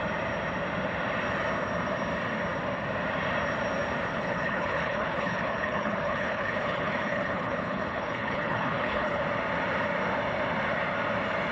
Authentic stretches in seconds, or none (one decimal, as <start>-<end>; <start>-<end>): 0.0-4.1; 9.2-11.5